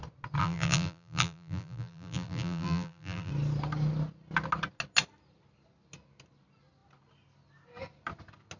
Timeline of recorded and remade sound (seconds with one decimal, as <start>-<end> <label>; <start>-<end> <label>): 0.0-0.4 recorded; 0.4-3.3 remade; 3.3-8.6 recorded